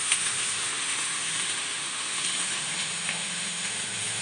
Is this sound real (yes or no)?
no